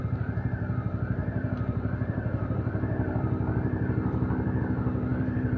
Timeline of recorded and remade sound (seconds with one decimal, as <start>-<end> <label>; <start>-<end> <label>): 0.0-1.2 recorded; 1.2-4.6 remade; 4.6-5.1 recorded; 5.1-5.6 remade